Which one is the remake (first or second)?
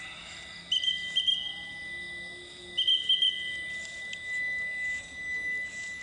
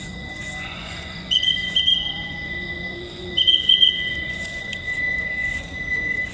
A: second